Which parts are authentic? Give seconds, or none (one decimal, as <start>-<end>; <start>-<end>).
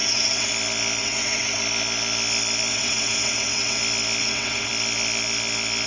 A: 0.5-1.0; 1.6-2.7; 3.8-4.2; 4.7-5.9